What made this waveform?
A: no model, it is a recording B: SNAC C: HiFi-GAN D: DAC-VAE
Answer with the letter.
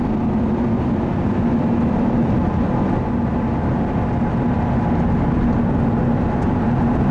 A